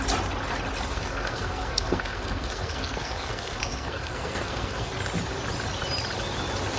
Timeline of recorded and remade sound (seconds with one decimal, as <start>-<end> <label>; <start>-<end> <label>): 0.0-0.9 recorded; 0.9-4.9 remade; 4.9-6.8 recorded